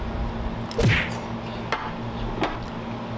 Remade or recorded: recorded